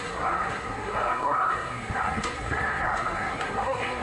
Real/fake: fake